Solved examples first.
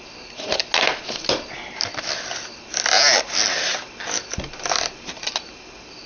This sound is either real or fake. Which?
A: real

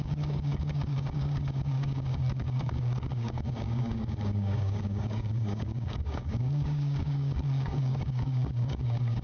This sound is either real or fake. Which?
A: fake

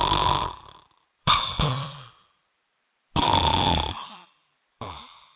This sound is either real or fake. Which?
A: fake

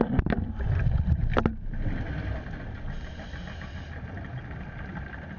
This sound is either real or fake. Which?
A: real